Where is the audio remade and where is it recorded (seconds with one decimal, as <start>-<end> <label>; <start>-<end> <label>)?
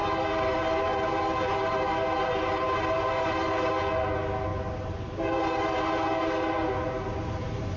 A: 0.0-3.7 remade; 3.7-4.5 recorded; 4.5-7.8 remade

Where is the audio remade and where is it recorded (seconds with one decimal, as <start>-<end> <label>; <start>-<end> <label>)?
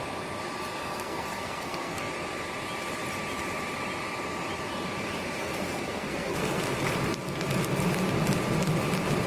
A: 0.0-0.8 recorded; 0.8-2.1 remade; 2.1-5.4 recorded; 5.4-6.6 remade; 6.6-9.3 recorded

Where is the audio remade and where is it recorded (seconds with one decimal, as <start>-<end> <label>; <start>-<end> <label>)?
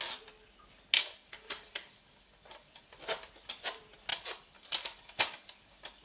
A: 0.0-1.0 recorded; 1.0-2.9 remade; 2.9-4.1 recorded; 4.1-6.0 remade